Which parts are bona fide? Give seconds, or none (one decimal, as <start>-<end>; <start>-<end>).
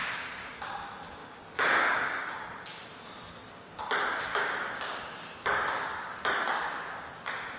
0.7-1.2; 2.3-4.3; 7.1-7.6